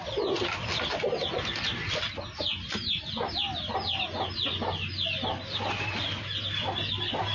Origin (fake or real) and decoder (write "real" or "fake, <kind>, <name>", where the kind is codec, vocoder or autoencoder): real